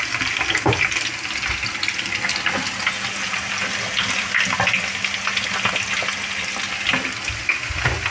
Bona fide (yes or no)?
yes